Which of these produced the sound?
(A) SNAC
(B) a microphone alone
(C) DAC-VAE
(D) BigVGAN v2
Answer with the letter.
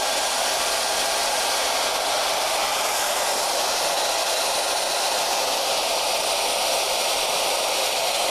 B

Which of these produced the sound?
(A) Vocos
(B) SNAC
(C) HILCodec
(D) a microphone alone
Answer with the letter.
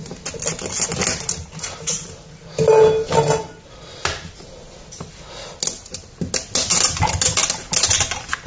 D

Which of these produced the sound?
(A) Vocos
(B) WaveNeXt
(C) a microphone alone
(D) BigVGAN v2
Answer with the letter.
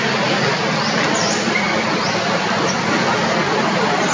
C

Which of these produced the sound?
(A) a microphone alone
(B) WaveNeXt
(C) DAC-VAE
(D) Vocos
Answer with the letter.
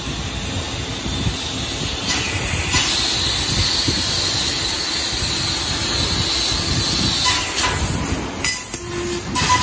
A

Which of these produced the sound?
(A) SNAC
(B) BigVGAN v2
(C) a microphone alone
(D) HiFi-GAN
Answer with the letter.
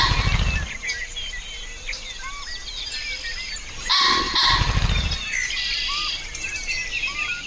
C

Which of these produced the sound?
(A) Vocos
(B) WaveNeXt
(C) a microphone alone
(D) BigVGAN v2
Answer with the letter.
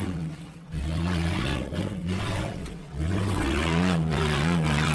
B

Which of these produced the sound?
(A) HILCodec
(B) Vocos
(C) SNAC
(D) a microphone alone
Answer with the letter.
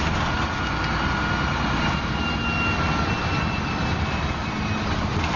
D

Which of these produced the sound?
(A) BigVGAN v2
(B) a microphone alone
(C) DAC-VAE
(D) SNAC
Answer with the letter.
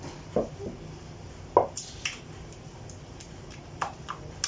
B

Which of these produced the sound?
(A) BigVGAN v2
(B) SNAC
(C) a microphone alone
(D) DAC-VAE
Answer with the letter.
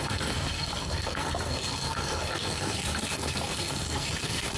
B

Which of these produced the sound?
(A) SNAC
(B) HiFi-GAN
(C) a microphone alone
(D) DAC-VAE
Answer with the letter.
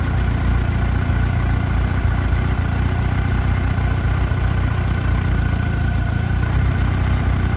C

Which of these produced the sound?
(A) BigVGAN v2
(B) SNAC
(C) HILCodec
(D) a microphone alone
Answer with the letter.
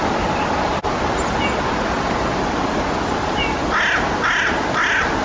D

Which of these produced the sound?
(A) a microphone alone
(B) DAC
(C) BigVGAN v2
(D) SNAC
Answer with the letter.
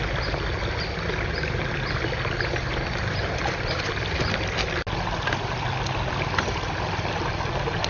A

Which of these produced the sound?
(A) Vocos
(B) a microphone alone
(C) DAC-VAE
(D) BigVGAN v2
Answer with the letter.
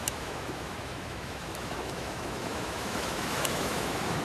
C